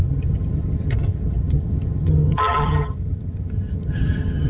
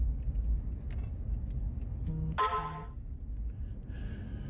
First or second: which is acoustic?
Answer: second